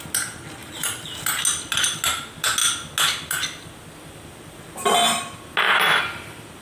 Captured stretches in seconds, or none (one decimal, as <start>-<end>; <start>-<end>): 0.0-0.6; 1.2-6.6